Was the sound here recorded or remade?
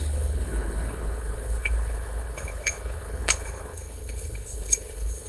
remade